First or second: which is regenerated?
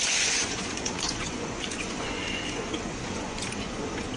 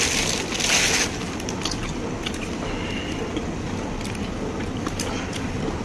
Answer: first